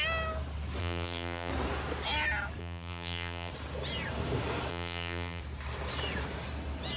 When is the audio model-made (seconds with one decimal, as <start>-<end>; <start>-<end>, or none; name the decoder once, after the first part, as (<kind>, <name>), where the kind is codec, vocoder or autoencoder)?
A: 0.8-1.5 (vocoder, BigVGAN v2); 2.6-3.5; 4.7-5.4